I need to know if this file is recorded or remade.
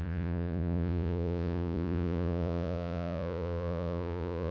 remade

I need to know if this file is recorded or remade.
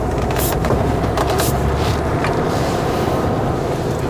remade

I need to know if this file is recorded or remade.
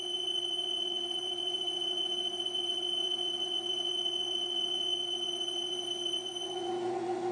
remade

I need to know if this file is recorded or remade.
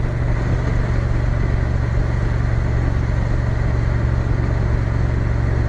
recorded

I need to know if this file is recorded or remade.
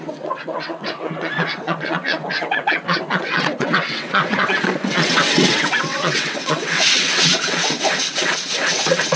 remade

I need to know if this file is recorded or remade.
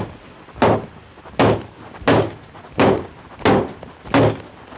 recorded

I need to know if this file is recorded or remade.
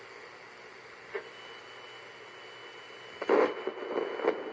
recorded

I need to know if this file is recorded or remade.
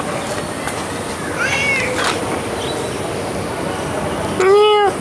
recorded